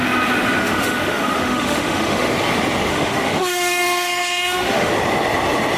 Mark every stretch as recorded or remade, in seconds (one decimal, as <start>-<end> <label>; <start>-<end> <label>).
0.0-0.6 recorded; 0.6-2.3 remade; 2.3-2.9 recorded; 2.9-4.9 remade; 4.9-5.8 recorded